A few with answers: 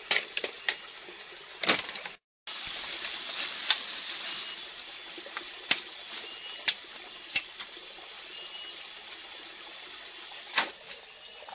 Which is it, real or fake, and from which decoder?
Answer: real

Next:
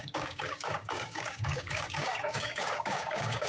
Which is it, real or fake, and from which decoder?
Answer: fake, codec, DAC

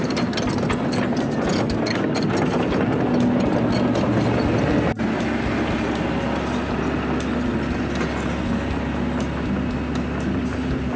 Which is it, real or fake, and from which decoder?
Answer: real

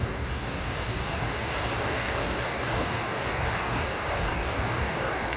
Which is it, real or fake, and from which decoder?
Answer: fake, codec, DAC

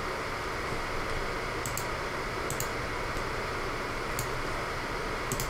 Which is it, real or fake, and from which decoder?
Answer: real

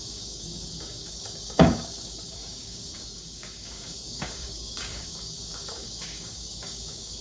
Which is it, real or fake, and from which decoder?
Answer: fake, codec, DAC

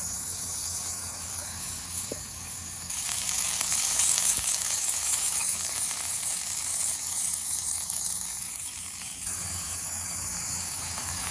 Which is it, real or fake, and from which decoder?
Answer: fake, codec, DAC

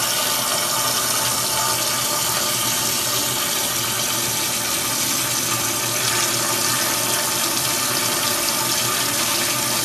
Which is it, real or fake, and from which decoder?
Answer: real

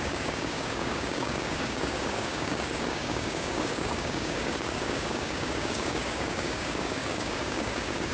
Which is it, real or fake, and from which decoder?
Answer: fake, codec, DAC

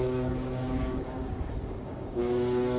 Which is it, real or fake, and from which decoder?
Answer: fake, codec, DAC